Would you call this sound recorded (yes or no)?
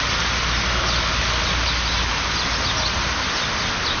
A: yes